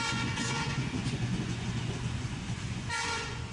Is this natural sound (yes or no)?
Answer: no